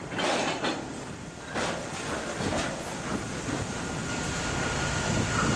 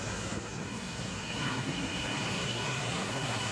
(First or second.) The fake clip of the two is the second